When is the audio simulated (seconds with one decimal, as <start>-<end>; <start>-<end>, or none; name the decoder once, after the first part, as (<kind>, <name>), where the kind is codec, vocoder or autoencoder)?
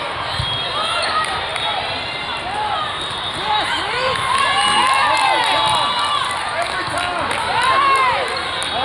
none